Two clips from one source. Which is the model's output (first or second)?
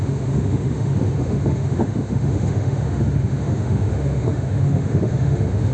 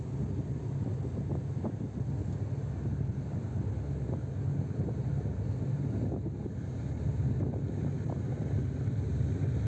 first